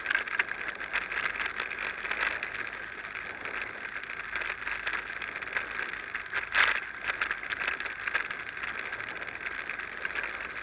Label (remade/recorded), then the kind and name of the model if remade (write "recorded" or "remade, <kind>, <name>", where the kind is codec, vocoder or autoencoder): recorded